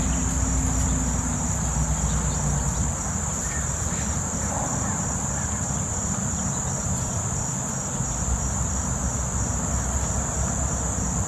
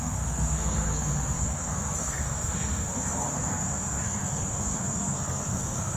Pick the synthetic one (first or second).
second